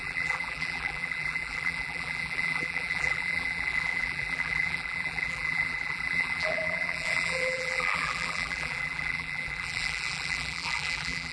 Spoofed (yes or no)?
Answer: yes